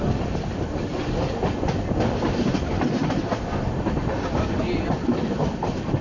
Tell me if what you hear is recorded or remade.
recorded